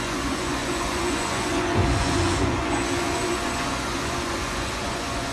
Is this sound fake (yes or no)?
yes